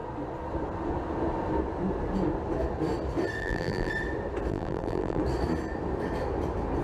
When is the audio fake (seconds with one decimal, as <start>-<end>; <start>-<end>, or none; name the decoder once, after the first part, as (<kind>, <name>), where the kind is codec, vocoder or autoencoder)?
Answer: 3.4-3.9 (vocoder, BigVGAN v2); 4.5-5.2